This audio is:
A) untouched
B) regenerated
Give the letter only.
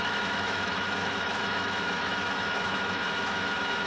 B